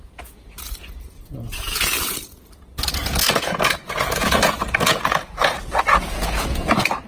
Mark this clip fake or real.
fake